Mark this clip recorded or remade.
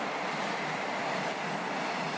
recorded